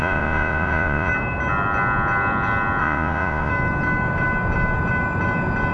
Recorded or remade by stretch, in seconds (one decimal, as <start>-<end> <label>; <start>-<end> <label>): 0.0-1.1 remade; 1.1-2.8 recorded; 2.8-3.5 remade; 3.5-5.7 recorded